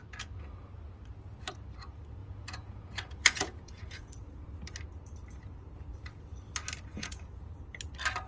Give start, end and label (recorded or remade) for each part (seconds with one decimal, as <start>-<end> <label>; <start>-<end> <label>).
0.0-2.2 recorded; 2.2-4.1 remade; 4.1-6.9 recorded; 6.9-7.5 remade; 7.5-8.3 recorded